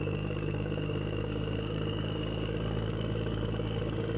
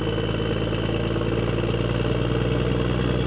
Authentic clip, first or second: second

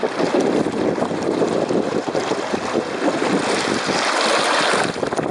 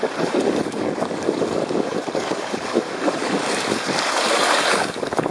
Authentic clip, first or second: first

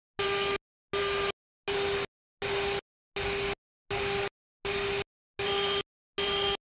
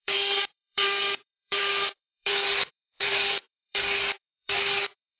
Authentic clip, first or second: first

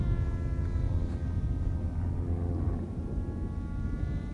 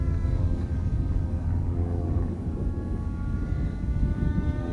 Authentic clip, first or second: first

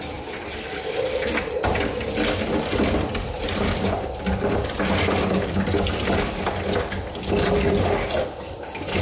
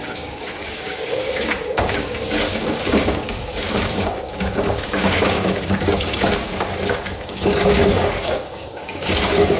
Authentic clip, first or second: first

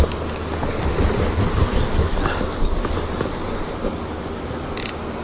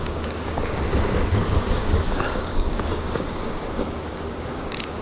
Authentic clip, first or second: first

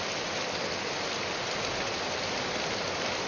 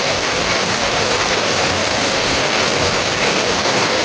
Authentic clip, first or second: first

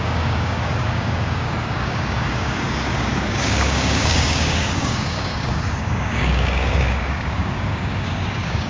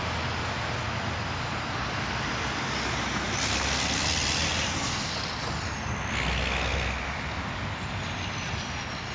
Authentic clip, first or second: second